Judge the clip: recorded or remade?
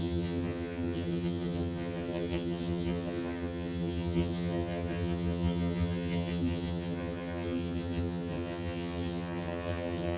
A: remade